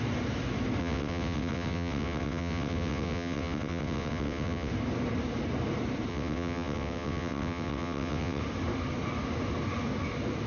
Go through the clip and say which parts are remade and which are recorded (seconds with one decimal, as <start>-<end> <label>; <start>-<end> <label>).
0.0-0.8 recorded; 0.8-4.7 remade; 4.7-6.1 recorded; 6.1-8.4 remade; 8.4-10.5 recorded